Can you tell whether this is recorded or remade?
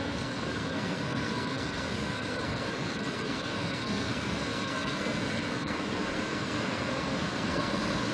remade